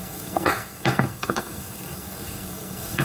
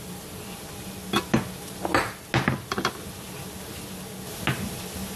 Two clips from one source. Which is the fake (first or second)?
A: first